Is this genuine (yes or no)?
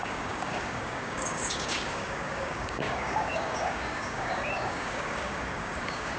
no